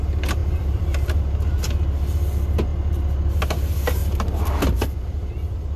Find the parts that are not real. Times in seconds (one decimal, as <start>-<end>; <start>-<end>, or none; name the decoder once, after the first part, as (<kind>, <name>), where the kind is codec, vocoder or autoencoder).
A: 0.4-1.2 (vocoder, BigVGAN v2); 4.0-5.8

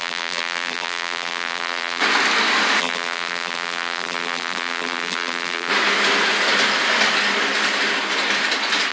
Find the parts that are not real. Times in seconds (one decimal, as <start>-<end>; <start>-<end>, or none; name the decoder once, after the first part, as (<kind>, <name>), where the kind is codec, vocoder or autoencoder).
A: 0.0-2.0 (vocoder, BigVGAN v2); 2.8-5.7

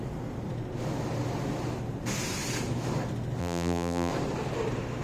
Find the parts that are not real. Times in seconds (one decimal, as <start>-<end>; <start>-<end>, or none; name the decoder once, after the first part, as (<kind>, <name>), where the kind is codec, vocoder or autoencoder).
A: 3.4-4.1 (vocoder, BigVGAN v2)

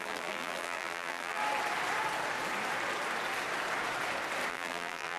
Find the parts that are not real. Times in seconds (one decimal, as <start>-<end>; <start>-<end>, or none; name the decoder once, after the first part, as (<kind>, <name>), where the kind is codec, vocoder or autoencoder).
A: 0.0-1.4 (vocoder, BigVGAN v2); 4.5-5.2

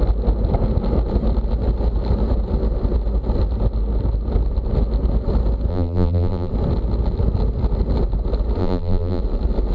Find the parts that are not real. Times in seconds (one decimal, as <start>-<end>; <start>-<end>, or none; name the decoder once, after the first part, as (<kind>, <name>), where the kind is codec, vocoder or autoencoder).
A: 5.7-6.5 (vocoder, BigVGAN v2); 8.6-9.2

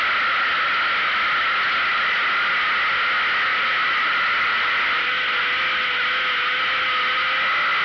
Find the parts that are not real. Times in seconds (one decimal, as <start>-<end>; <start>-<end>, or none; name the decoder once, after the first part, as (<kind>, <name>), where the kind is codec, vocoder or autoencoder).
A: 3.5-5.1 (vocoder, BigVGAN v2)